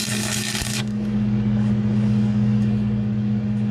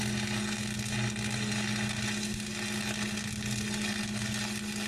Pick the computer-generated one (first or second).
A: first